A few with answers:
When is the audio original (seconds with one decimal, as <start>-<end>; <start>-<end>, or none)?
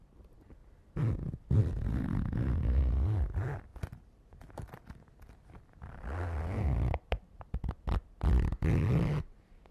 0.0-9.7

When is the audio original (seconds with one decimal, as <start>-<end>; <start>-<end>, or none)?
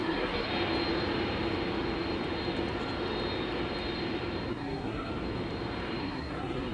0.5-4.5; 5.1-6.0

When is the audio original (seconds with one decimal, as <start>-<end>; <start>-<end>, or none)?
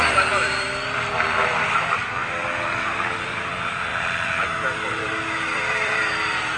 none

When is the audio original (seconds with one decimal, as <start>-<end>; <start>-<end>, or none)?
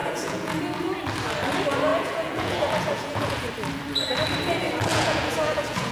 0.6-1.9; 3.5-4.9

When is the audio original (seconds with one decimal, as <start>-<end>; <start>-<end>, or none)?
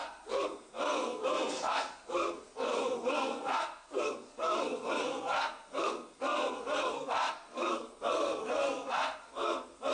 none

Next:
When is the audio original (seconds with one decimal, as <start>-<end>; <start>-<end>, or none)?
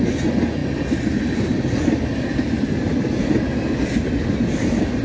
0.0-5.0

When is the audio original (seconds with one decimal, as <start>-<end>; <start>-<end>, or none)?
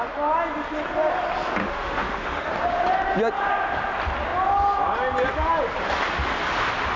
0.0-1.6; 2.5-7.0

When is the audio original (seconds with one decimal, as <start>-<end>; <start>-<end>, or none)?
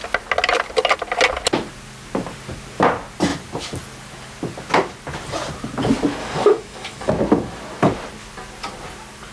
0.0-6.2; 7.1-9.3